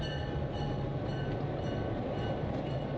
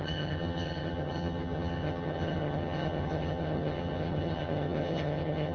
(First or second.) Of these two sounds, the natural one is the first